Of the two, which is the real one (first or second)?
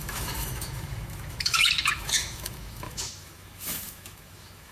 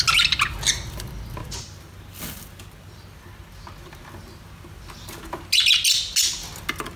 second